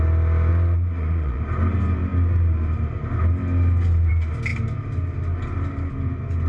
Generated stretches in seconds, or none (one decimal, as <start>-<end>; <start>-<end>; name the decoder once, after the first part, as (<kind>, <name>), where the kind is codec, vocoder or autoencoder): 0.5-1.4 (vocoder, Vocos)